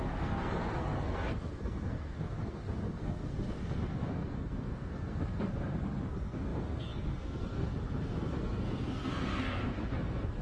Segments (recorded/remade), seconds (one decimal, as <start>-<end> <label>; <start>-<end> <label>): 0.0-10.4 remade